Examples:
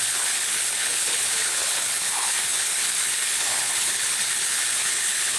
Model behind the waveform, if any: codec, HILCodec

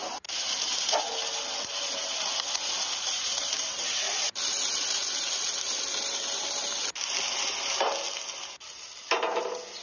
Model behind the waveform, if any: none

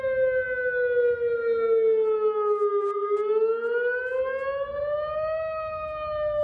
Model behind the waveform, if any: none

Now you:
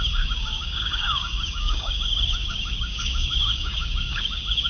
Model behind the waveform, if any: codec, DAC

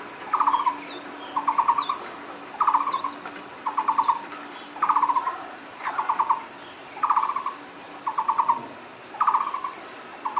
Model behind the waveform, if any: none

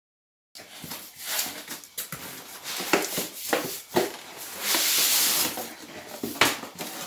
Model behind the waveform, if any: none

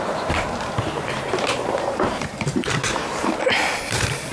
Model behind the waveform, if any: vocoder, BigVGAN v2